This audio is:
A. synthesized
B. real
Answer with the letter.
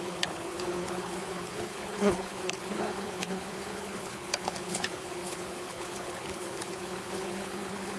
A